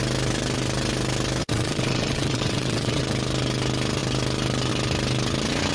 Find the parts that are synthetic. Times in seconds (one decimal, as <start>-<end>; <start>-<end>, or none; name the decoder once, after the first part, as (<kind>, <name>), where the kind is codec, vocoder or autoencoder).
1.4-3.0 (vocoder, WaveNeXt)